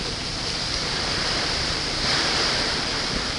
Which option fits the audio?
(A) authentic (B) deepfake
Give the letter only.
B